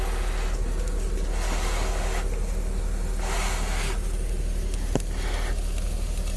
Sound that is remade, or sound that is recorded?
recorded